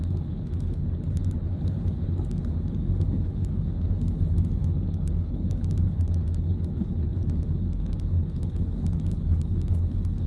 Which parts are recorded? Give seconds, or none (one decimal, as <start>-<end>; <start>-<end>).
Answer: none